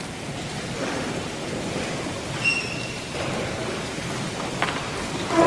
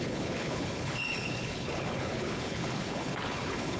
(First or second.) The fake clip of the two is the second